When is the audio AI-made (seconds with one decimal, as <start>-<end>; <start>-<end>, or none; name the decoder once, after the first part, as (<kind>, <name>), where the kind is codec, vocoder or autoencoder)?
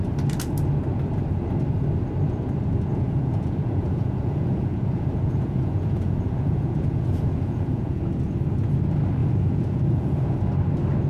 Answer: 2.9-8.0 (vocoder, Vocos); 9.2-10.4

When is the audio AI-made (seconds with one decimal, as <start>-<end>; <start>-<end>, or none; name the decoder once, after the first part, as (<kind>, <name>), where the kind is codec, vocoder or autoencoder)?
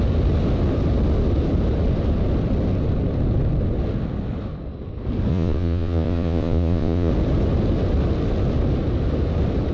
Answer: 5.3-7.1 (vocoder, Vocos)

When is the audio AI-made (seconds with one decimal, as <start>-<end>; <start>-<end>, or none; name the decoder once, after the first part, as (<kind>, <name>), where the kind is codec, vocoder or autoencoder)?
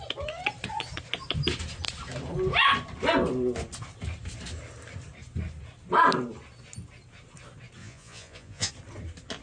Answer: 7.8-8.7 (vocoder, Vocos)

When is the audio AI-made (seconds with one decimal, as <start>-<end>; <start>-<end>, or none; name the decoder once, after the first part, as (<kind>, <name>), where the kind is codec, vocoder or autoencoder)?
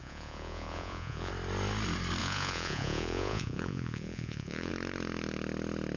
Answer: 0.0-1.3 (vocoder, Vocos); 2.2-4.7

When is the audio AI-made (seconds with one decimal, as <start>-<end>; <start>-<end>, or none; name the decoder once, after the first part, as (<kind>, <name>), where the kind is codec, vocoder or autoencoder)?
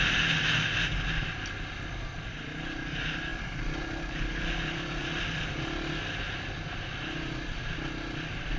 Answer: none